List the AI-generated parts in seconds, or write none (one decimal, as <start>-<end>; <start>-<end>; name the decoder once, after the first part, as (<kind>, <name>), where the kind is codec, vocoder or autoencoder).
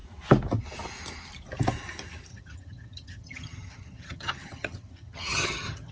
2.3-5.9 (vocoder, HiFi-GAN)